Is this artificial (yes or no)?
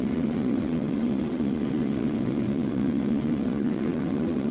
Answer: yes